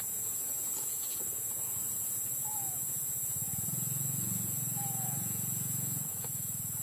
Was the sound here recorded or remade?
remade